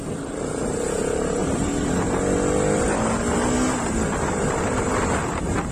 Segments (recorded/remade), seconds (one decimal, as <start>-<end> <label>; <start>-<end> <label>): 0.0-5.7 recorded